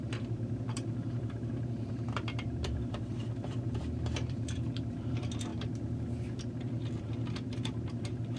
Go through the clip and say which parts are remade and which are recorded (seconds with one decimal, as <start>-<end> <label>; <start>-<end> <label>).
0.0-5.5 remade; 5.5-6.4 recorded; 6.4-8.4 remade